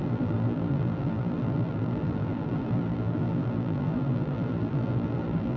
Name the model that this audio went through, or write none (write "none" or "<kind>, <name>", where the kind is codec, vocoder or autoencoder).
vocoder, BigVGAN v2